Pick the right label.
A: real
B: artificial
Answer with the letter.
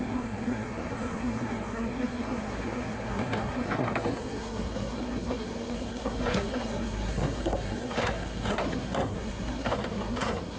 B